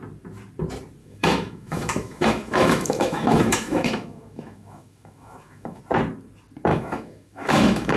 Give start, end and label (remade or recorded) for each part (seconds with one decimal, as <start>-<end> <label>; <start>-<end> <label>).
0.0-1.0 recorded; 1.0-5.8 remade; 5.8-6.7 recorded; 6.7-8.0 remade